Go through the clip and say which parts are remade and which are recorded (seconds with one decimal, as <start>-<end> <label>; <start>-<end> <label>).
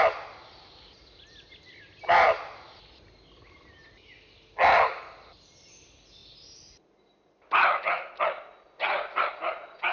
0.0-9.9 recorded